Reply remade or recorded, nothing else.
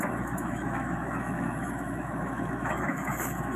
remade